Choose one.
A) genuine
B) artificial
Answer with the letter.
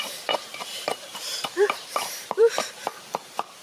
B